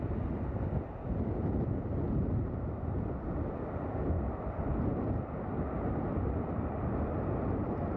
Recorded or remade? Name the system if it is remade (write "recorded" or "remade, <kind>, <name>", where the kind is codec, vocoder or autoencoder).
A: recorded